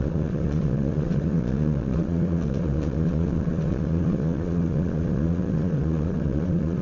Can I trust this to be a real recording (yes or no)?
no